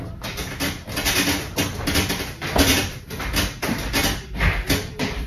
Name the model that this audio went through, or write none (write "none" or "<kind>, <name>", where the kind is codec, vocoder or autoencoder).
none